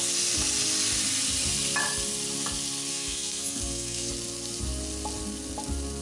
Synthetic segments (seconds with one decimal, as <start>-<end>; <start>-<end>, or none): 2.9-4.1